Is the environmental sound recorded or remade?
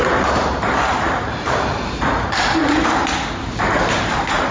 remade